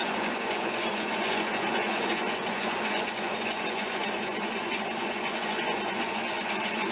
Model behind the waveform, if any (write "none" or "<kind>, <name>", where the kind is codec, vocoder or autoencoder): vocoder, Vocos